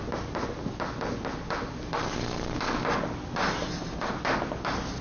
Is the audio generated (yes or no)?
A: no